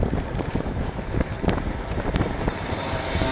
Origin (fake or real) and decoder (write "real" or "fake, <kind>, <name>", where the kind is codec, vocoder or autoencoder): real